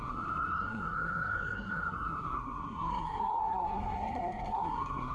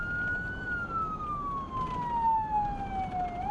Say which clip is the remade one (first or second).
first